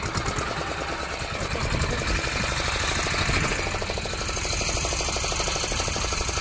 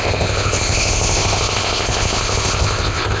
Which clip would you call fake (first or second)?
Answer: second